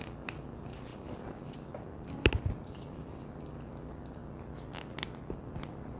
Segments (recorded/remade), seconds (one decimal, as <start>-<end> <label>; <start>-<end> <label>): 0.0-0.9 recorded; 0.9-3.4 remade; 3.4-6.0 recorded